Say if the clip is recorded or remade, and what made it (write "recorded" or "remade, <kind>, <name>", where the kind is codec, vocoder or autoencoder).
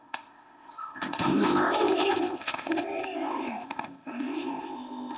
remade, codec, ZipCodec